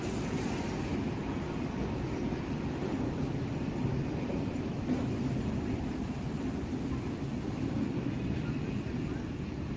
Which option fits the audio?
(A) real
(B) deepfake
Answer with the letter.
A